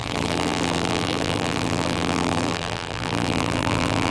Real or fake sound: fake